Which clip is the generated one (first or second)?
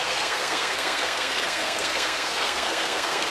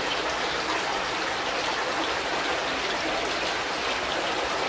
first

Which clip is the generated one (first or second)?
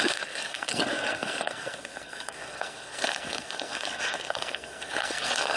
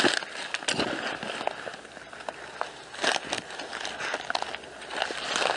first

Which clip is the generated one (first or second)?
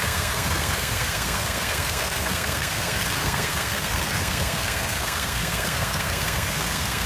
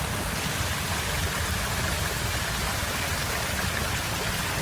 first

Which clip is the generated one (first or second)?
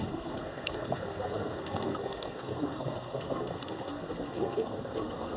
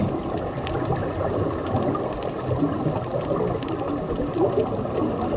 first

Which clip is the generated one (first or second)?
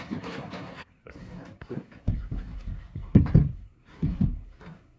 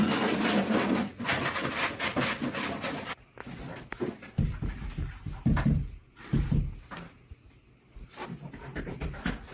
first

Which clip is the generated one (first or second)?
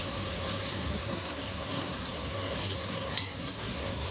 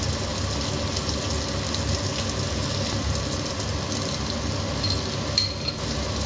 first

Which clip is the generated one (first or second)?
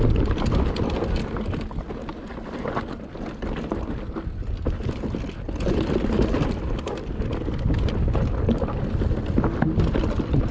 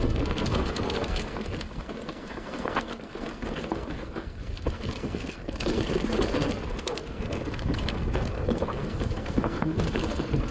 second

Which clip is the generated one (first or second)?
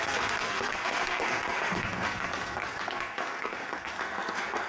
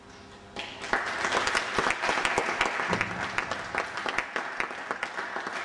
first